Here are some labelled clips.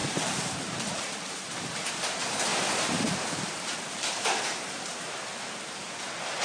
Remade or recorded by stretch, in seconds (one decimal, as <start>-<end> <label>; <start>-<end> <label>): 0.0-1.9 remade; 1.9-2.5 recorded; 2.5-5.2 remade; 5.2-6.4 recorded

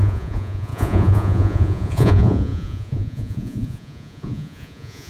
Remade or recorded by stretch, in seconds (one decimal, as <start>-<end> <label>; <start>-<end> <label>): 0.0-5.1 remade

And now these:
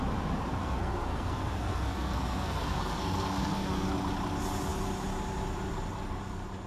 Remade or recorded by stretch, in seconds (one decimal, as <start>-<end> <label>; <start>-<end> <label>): 0.0-0.6 recorded; 0.6-3.9 remade; 3.9-6.7 recorded

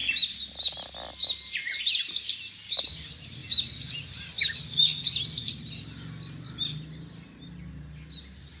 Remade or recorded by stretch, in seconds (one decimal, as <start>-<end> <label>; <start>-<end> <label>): 0.0-8.6 recorded

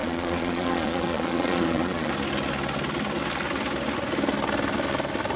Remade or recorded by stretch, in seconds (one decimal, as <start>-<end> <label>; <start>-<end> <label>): 0.0-2.1 remade; 2.1-5.4 recorded

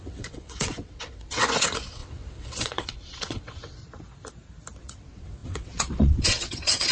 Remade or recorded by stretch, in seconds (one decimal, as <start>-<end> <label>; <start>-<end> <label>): 0.0-3.8 remade; 3.8-4.8 recorded; 4.8-6.9 remade